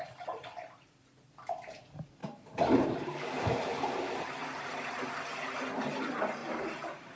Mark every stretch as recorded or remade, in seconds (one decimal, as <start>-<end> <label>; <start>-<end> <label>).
0.0-2.2 recorded; 2.2-4.7 remade; 4.7-6.4 recorded; 6.4-7.2 remade